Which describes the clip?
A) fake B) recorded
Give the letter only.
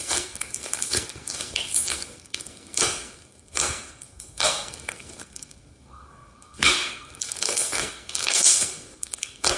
A